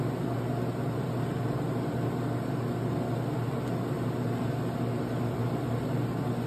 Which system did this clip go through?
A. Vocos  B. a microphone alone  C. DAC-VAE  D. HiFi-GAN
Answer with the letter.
B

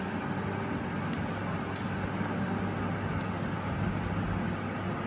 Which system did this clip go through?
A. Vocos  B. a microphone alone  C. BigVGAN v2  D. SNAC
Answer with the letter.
B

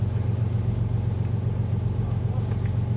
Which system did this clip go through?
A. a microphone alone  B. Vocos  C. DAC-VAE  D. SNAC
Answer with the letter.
A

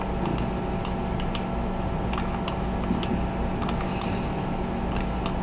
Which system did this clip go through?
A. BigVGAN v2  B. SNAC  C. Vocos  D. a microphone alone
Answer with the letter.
D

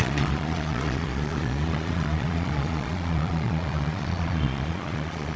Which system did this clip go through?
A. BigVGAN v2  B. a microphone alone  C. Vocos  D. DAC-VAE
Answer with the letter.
C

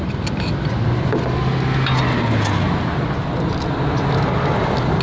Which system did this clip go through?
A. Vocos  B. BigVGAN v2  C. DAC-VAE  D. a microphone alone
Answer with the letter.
D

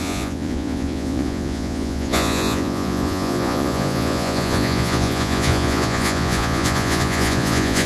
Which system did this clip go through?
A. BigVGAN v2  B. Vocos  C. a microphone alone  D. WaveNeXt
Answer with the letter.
B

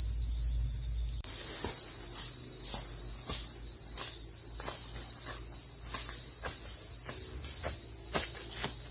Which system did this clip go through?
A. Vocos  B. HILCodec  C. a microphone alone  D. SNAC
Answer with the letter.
C